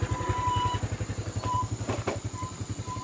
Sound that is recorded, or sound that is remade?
recorded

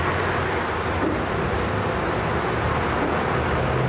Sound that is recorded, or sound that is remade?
recorded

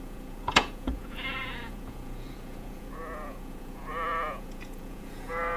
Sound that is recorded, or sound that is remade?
remade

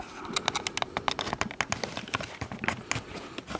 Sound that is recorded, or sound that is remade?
recorded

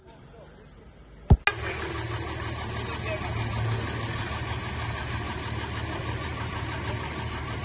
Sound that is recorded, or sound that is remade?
recorded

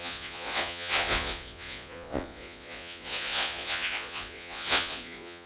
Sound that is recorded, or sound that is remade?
remade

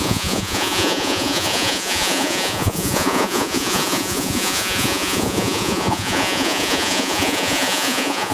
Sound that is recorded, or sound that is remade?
remade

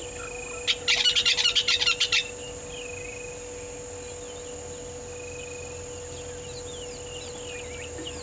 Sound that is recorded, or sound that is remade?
recorded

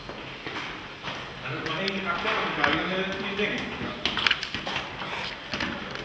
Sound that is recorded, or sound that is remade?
recorded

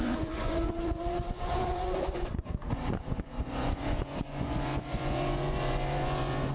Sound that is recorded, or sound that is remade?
remade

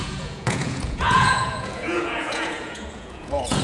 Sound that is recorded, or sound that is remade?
remade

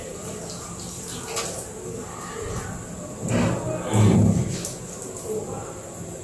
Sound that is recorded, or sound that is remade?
recorded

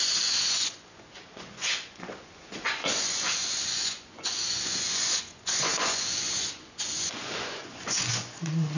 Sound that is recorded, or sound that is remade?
remade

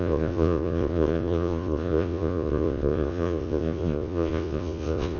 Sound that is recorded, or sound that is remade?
remade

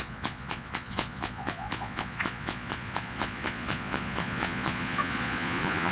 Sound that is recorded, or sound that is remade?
remade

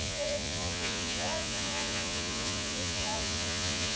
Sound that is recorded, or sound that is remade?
remade